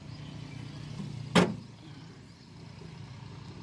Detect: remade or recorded recorded